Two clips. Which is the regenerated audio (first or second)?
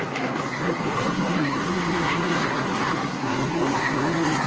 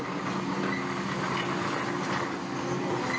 first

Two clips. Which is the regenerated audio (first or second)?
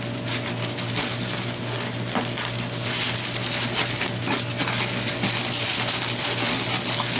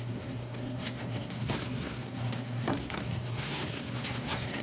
second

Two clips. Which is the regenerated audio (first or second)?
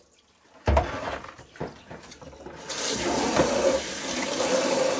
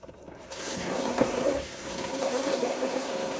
second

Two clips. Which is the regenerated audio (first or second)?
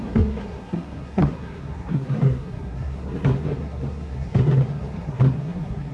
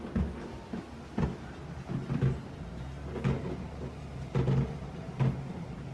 first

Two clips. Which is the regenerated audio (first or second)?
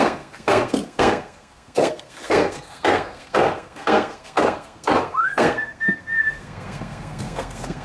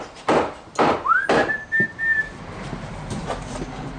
first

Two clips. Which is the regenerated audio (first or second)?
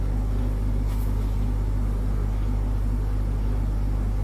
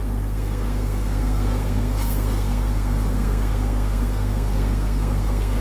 second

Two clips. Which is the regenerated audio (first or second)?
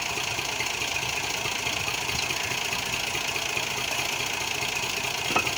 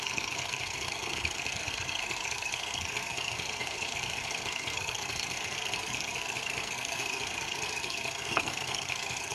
second